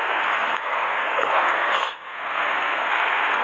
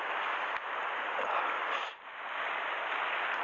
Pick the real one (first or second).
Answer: second